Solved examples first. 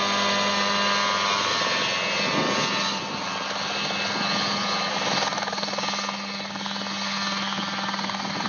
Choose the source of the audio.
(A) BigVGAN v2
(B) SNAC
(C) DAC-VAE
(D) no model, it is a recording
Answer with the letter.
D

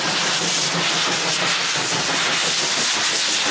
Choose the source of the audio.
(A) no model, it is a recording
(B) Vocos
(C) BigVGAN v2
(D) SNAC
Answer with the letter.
A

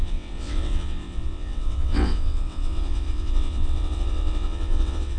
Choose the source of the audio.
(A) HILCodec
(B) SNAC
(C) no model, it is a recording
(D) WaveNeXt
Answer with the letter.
D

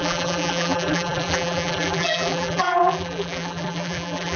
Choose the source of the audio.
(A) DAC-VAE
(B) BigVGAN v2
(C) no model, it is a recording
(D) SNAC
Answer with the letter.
B